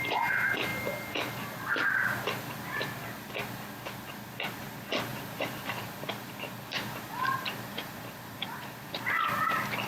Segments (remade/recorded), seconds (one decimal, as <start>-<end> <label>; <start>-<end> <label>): 0.0-5.1 recorded; 5.1-9.5 remade; 9.5-9.9 recorded